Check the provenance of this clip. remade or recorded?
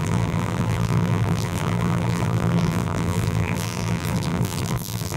remade